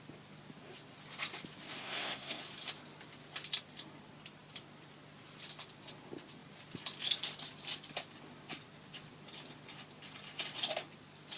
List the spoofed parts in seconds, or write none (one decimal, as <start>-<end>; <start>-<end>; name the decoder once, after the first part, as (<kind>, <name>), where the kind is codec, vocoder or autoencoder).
1.8-2.4 (codec, SNAC)